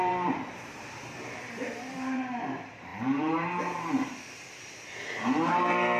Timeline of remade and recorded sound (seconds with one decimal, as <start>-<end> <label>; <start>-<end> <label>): 0.0-6.0 remade